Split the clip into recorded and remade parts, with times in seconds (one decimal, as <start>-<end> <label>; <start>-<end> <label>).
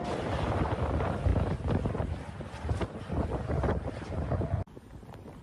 0.0-5.4 recorded